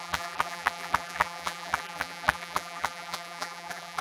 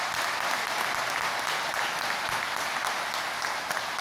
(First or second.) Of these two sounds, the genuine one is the second